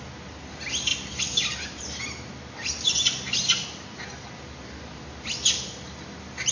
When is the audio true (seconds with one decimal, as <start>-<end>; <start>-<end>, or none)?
0.0-6.5